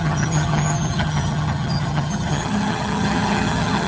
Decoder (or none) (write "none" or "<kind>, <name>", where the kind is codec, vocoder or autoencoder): vocoder, HiFi-GAN